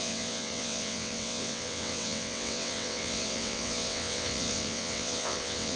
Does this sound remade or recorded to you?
remade